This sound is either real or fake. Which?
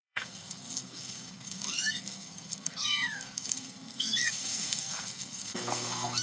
fake